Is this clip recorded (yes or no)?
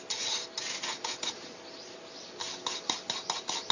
yes